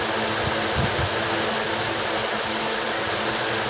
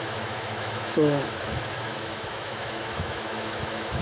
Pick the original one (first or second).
first